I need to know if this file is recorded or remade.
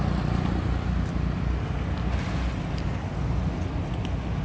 recorded